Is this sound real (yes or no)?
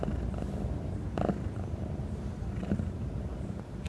no